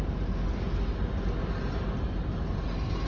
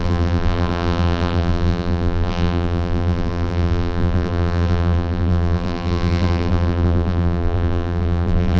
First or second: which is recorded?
first